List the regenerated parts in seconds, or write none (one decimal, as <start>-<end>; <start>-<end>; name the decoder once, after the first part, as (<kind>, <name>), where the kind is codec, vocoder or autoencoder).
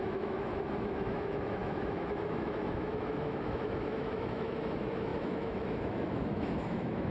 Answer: 0.0-7.1 (autoencoder, DAC-VAE)